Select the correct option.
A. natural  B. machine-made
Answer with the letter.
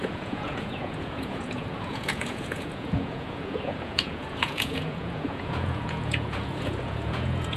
B